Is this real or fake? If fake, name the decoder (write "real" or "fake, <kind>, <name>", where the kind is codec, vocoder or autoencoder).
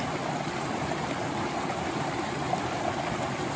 real